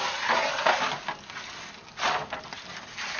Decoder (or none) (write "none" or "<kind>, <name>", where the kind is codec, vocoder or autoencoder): none